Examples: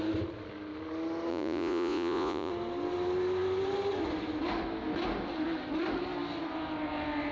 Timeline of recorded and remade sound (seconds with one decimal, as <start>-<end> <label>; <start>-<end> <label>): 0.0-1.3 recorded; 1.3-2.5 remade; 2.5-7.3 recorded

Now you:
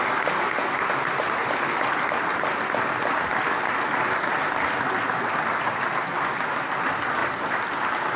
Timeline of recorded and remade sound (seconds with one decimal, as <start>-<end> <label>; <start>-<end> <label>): 0.0-8.2 recorded

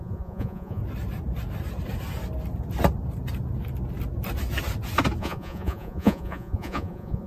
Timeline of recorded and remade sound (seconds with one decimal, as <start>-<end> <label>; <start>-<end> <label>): 0.0-0.8 remade; 0.8-5.2 recorded; 5.2-7.3 remade

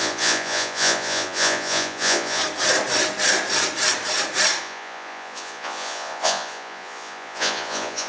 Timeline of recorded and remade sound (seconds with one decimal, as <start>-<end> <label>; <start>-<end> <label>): 0.0-2.4 remade; 2.4-4.6 recorded; 4.6-8.1 remade

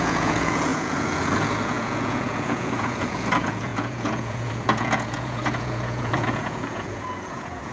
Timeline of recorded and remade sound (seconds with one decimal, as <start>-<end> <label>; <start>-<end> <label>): 0.0-7.7 remade

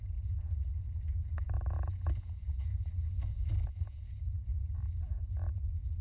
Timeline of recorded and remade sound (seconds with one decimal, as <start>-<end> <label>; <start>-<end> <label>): 0.0-6.0 remade